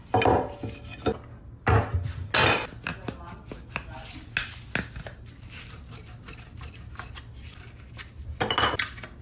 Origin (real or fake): real